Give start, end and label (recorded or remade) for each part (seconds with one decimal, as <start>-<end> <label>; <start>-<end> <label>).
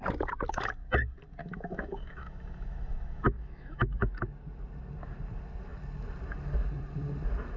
0.0-1.4 recorded; 1.4-4.1 remade; 4.1-7.6 recorded